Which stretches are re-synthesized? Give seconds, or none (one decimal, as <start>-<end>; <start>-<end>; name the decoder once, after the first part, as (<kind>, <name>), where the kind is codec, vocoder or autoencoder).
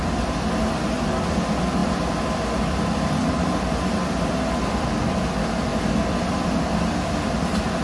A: none